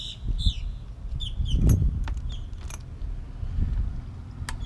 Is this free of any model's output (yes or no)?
yes